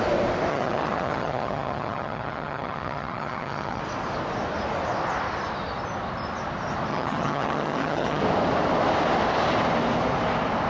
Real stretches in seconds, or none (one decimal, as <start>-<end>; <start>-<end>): 0.0-0.5; 3.8-6.9; 8.2-10.7